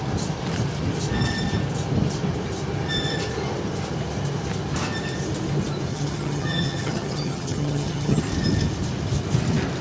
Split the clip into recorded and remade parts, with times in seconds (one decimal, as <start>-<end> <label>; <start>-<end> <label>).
0.0-5.9 recorded; 5.9-8.2 remade; 8.2-9.8 recorded